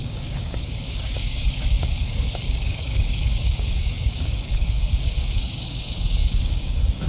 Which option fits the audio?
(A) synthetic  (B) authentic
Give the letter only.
A